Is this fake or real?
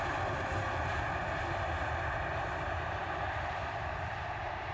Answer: real